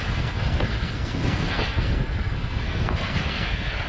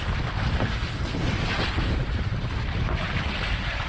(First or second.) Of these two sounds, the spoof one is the first